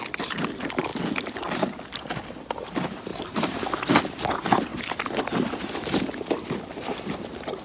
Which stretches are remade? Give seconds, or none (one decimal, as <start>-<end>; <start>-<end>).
3.1-3.6